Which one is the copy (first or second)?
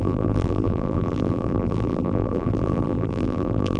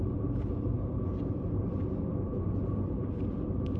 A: first